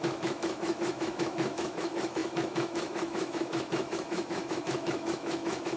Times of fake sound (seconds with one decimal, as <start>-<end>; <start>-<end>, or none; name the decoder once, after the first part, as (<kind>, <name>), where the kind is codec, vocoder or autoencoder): 0.0-5.8 (autoencoder, DAC-VAE)